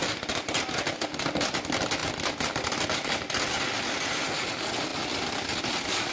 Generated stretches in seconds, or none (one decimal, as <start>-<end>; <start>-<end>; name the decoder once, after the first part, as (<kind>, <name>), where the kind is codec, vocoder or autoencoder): none